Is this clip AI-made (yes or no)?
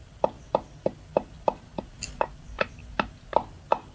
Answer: no